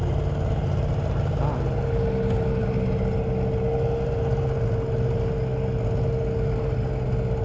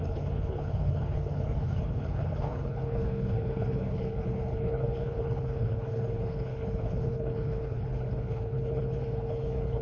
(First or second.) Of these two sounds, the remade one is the second